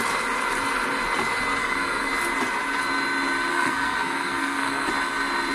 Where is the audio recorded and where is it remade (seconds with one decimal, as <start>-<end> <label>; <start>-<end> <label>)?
0.0-1.6 recorded; 1.6-2.1 remade; 2.1-3.5 recorded; 3.5-4.9 remade; 4.9-5.5 recorded